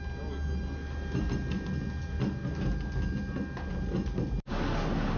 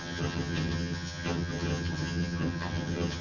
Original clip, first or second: first